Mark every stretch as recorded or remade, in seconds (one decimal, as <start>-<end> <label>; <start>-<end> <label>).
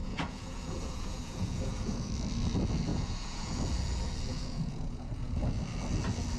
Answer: 0.0-2.1 remade; 2.1-2.9 recorded; 2.9-3.6 remade; 3.6-4.3 recorded; 4.3-5.5 remade; 5.5-6.4 recorded